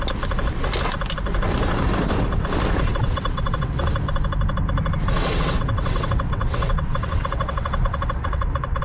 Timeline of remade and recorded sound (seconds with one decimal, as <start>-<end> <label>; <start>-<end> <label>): 0.0-2.9 recorded; 2.9-3.8 remade; 3.8-5.2 recorded; 5.2-8.8 remade